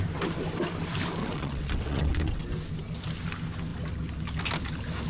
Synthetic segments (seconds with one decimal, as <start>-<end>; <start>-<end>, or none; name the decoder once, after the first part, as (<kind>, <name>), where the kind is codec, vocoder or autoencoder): 1.2-2.4 (vocoder, WaveNeXt)